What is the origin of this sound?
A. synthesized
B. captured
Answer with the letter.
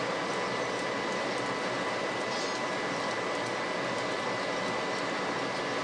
B